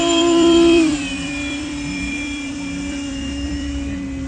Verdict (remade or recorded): remade